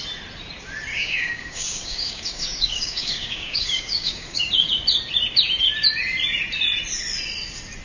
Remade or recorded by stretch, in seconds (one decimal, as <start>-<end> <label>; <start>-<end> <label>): 0.0-0.9 recorded; 0.9-4.5 remade; 4.5-7.8 recorded